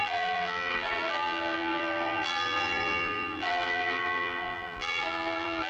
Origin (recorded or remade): remade